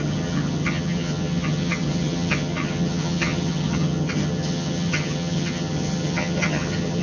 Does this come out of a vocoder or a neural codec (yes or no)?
yes